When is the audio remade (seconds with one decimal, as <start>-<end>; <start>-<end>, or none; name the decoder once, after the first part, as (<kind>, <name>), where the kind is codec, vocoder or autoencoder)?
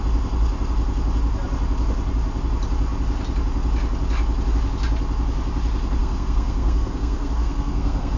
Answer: 6.0-8.2 (codec, SNAC)